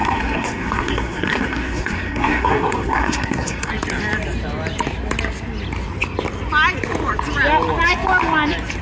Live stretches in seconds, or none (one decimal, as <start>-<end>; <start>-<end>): 3.7-8.8